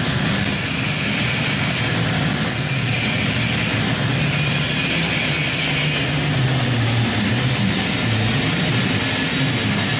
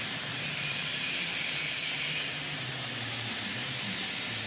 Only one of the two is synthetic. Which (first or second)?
second